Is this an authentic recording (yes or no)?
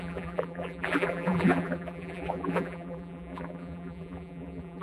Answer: no